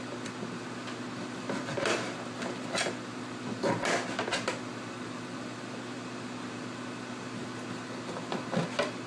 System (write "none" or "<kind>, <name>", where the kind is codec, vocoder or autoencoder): none